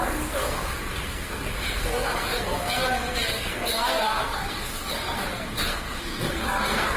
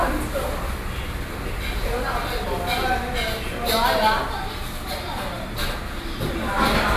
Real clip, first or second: second